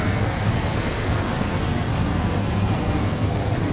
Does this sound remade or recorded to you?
remade